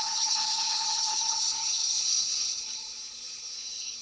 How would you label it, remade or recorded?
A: remade